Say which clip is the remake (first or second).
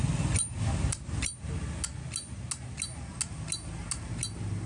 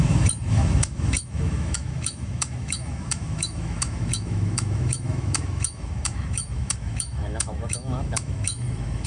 second